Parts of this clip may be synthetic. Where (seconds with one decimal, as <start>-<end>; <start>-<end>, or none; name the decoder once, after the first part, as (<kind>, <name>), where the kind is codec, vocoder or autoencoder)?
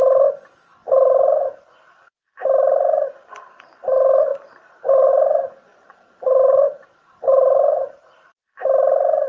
4.3-5.1 (vocoder, BigVGAN v2); 5.7-8.5